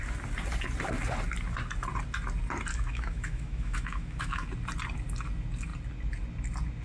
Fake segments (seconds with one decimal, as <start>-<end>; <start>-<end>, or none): 2.7-4.5